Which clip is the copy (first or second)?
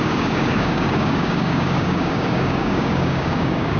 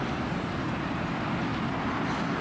first